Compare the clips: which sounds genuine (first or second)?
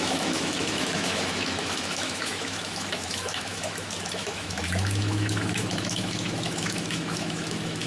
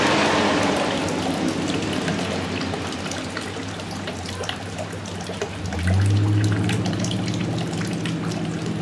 second